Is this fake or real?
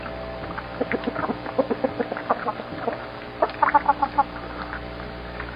real